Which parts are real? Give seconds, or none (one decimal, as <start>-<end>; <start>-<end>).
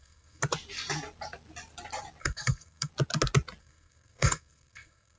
0.4-2.2; 2.9-3.6